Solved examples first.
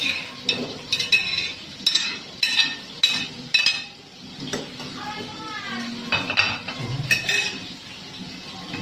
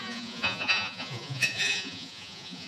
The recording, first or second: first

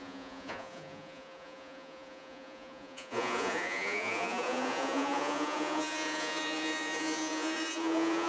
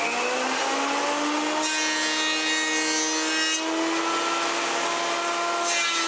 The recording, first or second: second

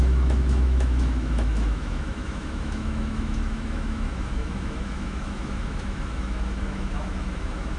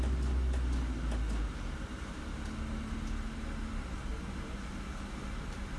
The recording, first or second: second